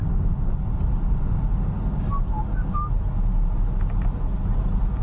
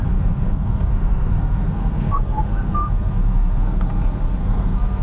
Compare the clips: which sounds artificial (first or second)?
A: second